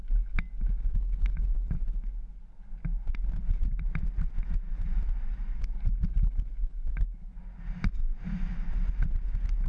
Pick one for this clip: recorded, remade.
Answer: recorded